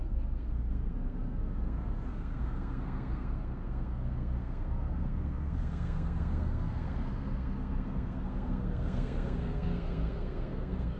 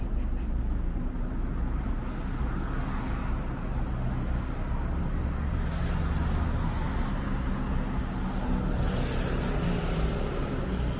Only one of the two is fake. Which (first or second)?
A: first